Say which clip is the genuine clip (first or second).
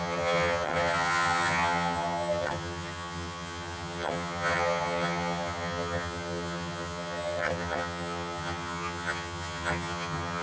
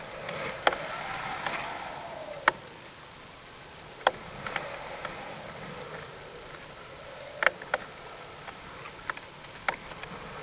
second